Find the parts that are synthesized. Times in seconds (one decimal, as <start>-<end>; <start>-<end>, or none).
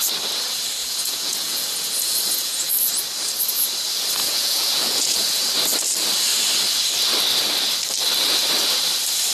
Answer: 0.8-2.7; 4.2-5.4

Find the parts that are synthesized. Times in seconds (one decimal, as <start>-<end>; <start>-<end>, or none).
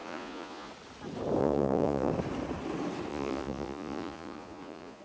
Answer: 0.0-0.7; 1.4-2.1; 3.1-5.0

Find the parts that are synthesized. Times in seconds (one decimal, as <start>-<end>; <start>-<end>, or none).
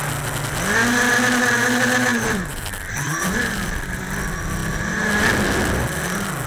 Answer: 2.1-4.0; 4.6-5.1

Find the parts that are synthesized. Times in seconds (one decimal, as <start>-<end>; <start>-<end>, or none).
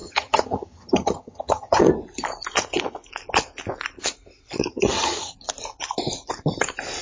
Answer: 0.0-1.9; 4.7-5.3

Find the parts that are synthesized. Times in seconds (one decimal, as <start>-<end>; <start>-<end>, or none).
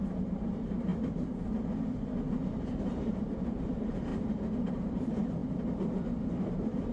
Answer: 0.0-0.9; 2.3-4.1; 4.7-5.4; 6.2-6.9